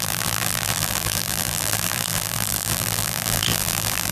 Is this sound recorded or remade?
remade